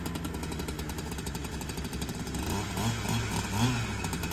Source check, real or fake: real